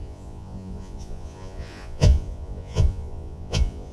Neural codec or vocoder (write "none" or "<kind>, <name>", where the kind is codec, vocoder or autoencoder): vocoder, Vocos